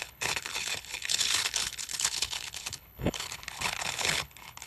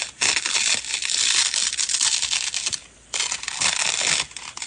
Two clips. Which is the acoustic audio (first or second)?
second